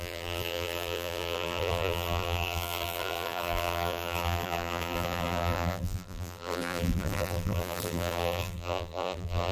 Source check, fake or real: fake